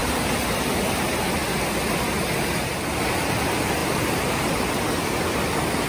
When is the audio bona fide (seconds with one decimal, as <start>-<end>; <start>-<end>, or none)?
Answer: 0.7-3.8; 4.5-5.9